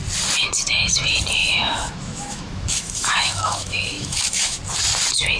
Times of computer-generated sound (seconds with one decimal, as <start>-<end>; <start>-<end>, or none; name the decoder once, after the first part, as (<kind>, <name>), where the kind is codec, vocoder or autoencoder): 1.4-4.6 (autoencoder, DAC-VAE)